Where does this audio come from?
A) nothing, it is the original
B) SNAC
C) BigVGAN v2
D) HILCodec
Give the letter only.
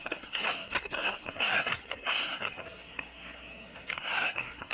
B